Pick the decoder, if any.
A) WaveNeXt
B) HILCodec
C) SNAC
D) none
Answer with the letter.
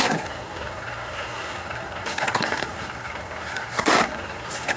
C